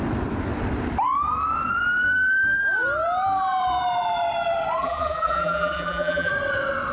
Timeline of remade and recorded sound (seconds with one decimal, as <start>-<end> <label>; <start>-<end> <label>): 0.0-4.8 recorded; 4.8-6.3 remade; 6.3-6.9 recorded